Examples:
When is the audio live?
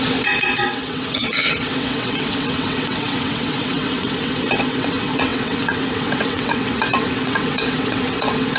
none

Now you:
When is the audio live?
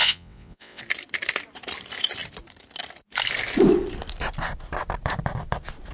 0.8-5.9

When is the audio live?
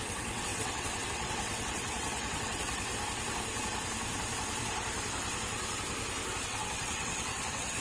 2.9-6.4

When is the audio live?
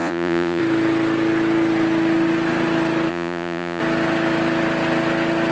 0.6-3.1; 3.8-5.5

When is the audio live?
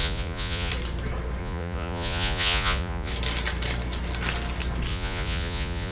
0.7-1.4; 3.1-4.9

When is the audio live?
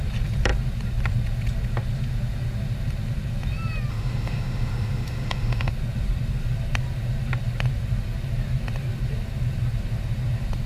0.0-3.9; 5.7-10.7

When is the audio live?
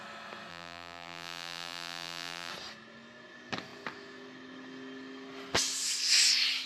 0.0-0.5; 2.5-6.7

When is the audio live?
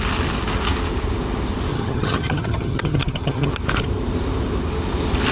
0.0-1.7; 3.5-5.3